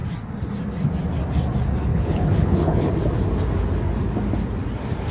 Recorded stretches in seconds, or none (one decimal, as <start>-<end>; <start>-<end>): 0.0-1.9; 2.9-5.1